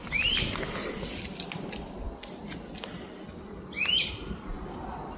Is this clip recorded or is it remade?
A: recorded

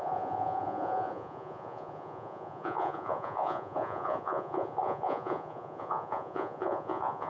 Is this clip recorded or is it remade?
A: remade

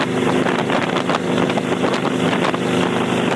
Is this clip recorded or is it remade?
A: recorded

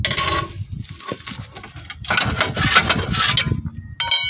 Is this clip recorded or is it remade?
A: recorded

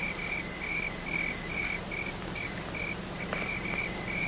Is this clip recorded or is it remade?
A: recorded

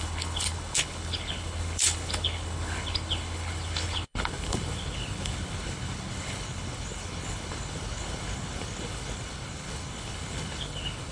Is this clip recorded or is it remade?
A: remade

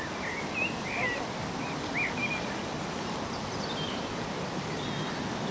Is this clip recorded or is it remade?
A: recorded